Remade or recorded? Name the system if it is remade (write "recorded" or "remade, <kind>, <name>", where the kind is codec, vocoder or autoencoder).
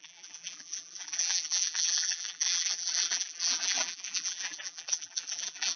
remade, vocoder, BigVGAN v2